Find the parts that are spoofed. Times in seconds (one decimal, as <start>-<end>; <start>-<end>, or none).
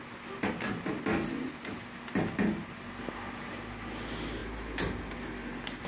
none